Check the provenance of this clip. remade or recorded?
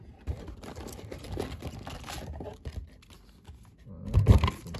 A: recorded